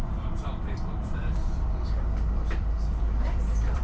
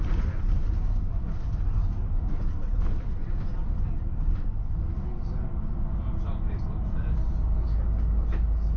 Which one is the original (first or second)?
second